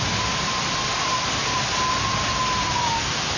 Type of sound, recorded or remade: recorded